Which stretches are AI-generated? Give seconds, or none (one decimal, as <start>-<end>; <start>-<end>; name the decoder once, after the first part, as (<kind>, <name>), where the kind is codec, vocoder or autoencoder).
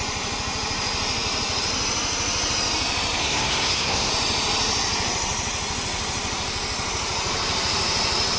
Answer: 3.2-4.1 (codec, SNAC)